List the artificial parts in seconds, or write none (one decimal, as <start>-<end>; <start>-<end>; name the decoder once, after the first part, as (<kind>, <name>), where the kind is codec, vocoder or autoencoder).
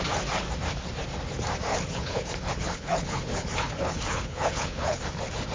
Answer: 1.7-5.0 (codec, HILCodec)